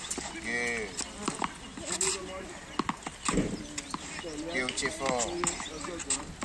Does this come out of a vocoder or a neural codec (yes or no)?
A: no